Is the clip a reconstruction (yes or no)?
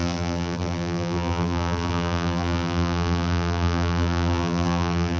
yes